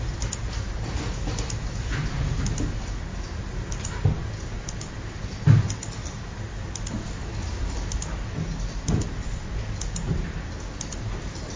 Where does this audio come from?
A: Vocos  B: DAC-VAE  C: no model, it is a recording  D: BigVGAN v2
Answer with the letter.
C